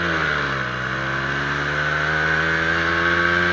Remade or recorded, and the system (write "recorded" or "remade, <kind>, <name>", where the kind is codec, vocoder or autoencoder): recorded